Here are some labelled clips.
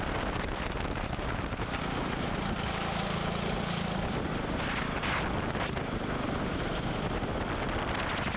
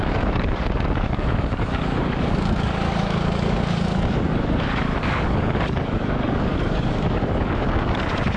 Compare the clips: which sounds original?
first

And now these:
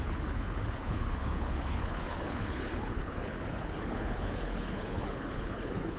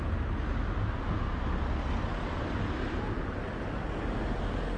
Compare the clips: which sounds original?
second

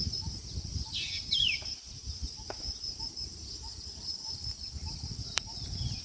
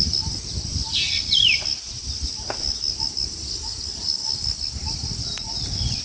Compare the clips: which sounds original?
second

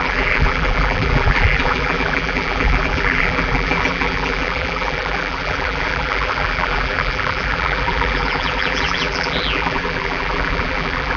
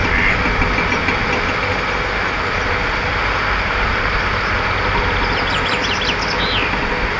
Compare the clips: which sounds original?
second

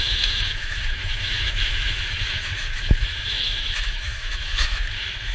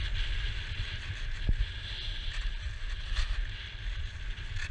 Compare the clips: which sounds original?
second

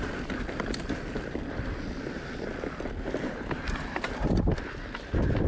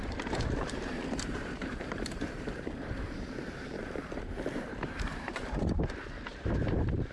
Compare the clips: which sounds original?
first